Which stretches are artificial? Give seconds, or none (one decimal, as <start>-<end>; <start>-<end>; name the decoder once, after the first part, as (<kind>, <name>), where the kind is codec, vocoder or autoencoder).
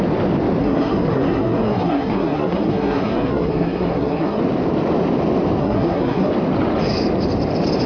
0.6-4.4 (codec, SNAC); 5.6-6.3